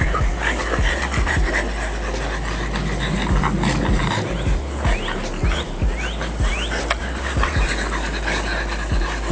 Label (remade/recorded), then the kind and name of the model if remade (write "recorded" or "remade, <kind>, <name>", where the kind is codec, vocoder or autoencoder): recorded